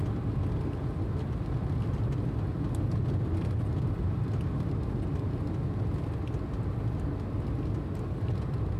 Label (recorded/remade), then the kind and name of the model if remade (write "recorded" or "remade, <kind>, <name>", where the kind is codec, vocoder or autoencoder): recorded